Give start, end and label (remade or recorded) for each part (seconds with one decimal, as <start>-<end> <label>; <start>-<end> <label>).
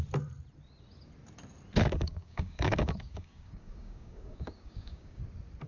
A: 0.0-1.8 recorded; 1.8-5.2 remade; 5.2-5.7 recorded